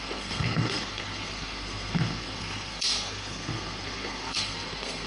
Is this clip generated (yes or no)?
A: yes